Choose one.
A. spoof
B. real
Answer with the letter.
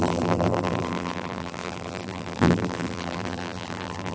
A